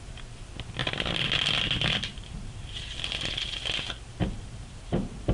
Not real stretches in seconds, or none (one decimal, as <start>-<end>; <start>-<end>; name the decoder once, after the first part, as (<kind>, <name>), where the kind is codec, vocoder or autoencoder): none